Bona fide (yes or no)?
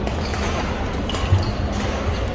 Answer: yes